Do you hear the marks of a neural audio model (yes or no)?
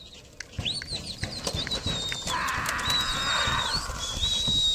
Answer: no